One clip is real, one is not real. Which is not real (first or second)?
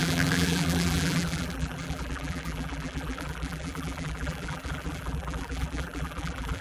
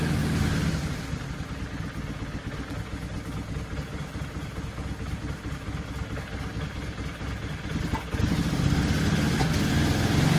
first